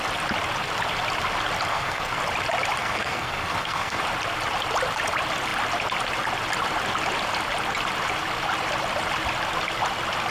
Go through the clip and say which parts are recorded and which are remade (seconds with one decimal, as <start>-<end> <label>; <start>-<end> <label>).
0.0-1.7 recorded; 1.7-2.2 remade; 2.2-2.8 recorded; 2.8-4.0 remade; 4.0-10.3 recorded